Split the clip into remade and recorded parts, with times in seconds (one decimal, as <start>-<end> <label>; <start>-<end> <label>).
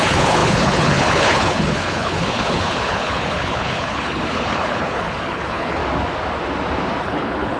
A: 0.0-5.8 remade; 5.8-7.0 recorded; 7.0-7.6 remade